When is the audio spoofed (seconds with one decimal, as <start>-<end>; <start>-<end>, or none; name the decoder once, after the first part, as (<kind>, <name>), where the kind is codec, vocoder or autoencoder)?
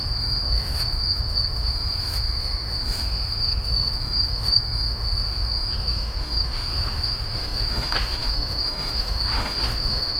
0.0-10.2 (autoencoder, DAC-VAE)